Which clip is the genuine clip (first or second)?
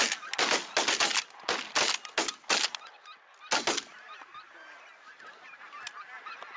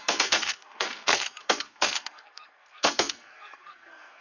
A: first